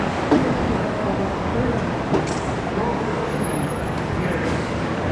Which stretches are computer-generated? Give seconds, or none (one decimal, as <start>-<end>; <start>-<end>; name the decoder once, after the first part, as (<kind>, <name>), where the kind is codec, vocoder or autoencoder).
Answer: 0.0-1.5 (codec, DAC); 2.7-5.1